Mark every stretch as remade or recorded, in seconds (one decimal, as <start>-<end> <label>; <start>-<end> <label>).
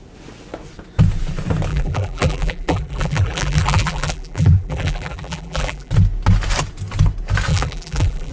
0.0-1.7 recorded; 1.7-5.9 remade; 5.9-7.5 recorded; 7.5-8.3 remade